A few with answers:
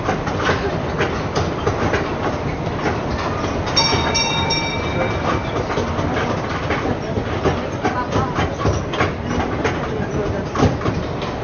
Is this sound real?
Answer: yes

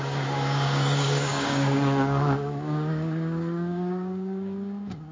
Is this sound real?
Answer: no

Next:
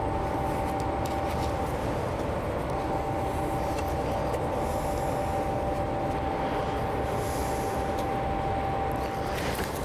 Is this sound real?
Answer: yes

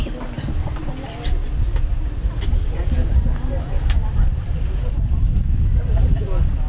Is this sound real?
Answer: yes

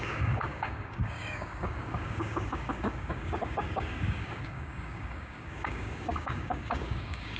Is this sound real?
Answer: no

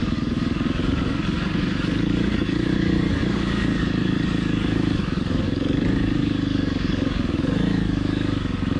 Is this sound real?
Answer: no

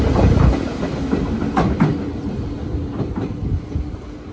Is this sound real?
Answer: yes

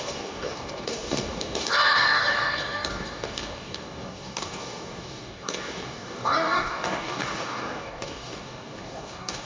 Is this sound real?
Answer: no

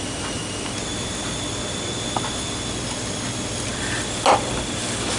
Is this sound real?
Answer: yes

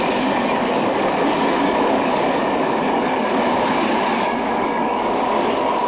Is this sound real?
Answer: no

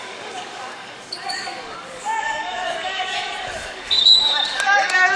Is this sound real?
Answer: no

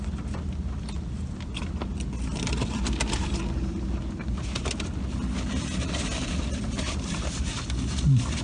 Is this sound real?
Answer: yes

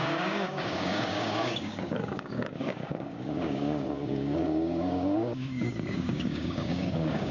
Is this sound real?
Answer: no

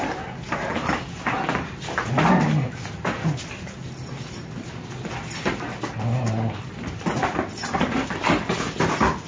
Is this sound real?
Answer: yes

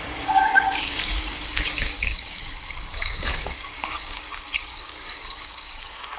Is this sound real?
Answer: no